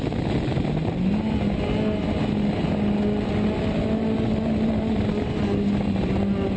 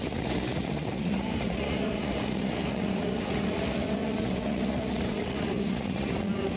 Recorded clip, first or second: first